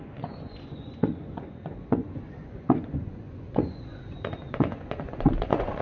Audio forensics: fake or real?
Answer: fake